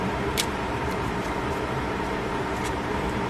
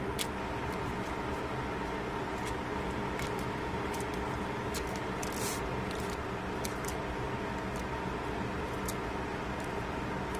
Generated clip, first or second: first